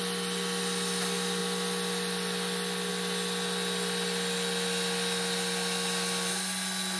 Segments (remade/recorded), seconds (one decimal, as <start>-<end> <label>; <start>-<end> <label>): 0.0-7.0 recorded